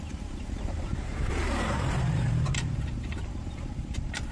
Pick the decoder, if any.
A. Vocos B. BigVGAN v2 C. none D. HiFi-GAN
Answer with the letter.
B